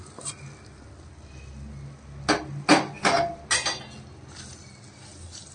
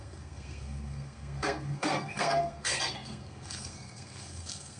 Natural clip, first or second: first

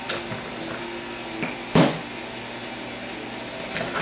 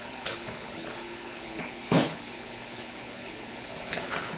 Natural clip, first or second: first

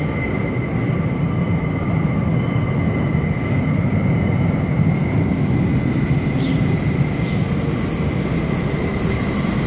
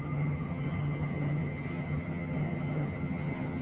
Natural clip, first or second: first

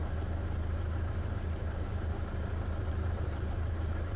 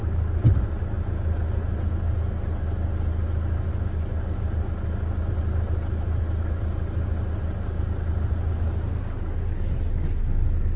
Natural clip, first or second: second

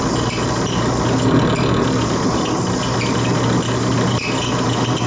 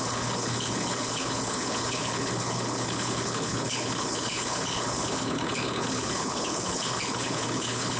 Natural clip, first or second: first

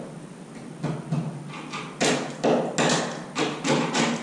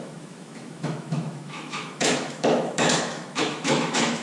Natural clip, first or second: first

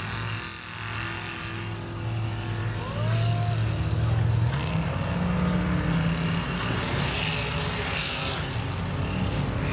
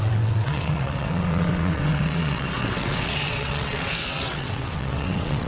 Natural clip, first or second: first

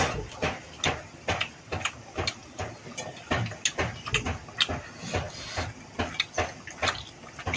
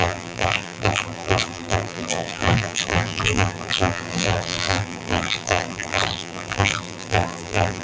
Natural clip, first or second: first